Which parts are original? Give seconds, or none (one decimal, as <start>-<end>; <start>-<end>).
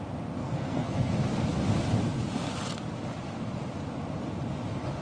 0.0-0.4; 1.1-5.0